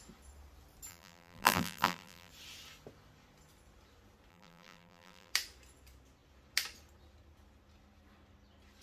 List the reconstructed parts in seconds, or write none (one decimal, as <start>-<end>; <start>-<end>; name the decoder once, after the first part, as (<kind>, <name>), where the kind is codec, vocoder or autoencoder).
0.9-2.3 (vocoder, BigVGAN v2); 4.3-5.3